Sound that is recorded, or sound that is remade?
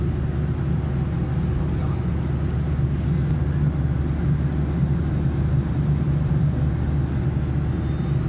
recorded